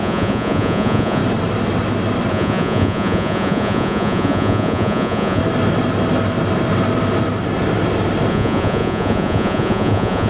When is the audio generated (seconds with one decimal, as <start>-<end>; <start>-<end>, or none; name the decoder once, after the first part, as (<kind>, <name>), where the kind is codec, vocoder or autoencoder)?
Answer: 0.0-1.2 (vocoder, Vocos); 2.3-5.4; 8.3-10.3